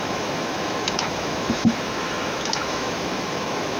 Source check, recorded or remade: remade